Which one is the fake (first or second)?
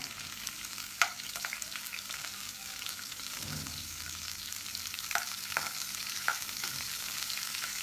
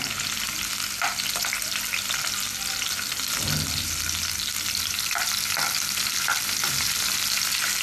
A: first